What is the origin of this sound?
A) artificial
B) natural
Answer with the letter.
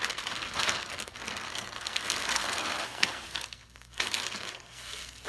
A